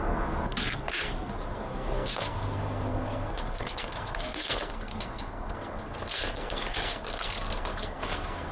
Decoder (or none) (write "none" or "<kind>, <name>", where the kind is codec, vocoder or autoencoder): codec, SNAC